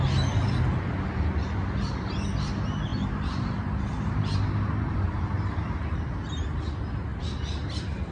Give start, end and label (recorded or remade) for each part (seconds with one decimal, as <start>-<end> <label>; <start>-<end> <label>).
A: 0.0-2.9 recorded; 2.9-6.1 remade; 6.1-8.1 recorded